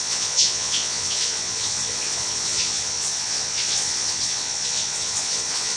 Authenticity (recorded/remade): remade